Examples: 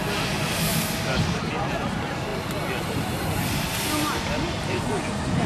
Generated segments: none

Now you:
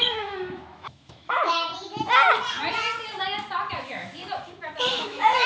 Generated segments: 0.0-1.7; 3.7-4.2; 4.9-5.5

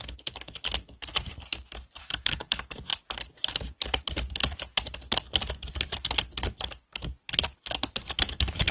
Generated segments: 0.0-1.1; 2.0-2.9; 8.1-8.7

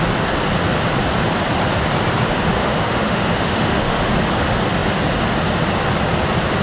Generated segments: 2.6-4.1